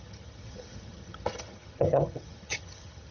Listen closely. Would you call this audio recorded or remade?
remade